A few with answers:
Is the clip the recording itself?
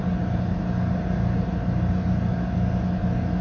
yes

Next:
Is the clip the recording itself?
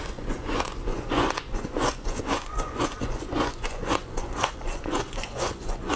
no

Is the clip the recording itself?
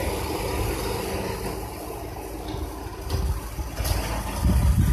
yes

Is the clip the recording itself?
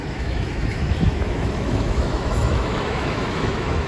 no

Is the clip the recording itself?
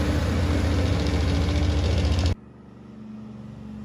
yes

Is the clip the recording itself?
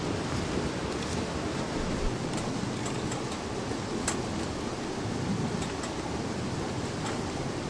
yes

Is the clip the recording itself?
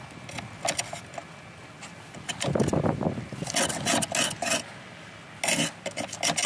yes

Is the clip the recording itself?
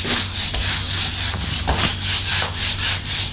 yes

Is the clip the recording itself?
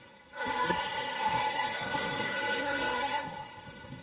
no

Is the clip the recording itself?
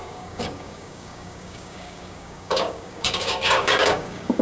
no